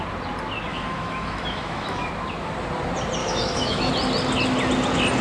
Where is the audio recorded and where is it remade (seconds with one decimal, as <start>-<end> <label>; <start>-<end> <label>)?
0.0-0.7 recorded; 0.7-2.1 remade; 2.1-3.2 recorded; 3.2-3.9 remade; 3.9-5.2 recorded